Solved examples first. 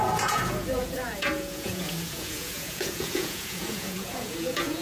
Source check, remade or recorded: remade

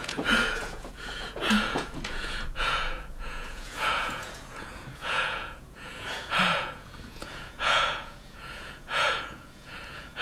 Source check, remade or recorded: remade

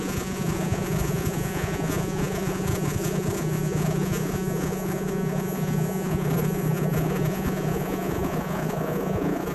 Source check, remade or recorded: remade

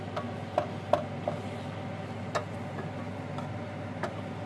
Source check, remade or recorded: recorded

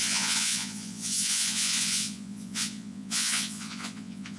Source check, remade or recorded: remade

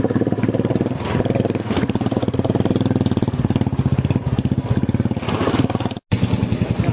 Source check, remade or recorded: recorded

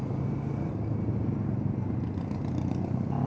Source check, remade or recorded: recorded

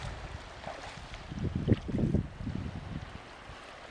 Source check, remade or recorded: recorded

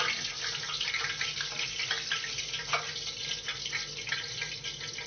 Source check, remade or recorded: recorded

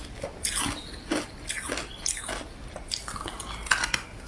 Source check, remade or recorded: recorded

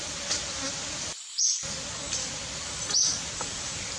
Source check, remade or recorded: recorded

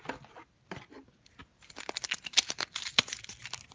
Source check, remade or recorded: recorded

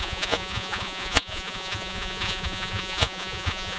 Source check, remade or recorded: remade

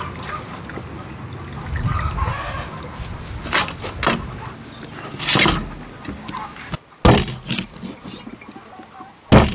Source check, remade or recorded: recorded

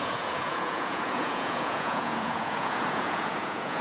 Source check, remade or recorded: remade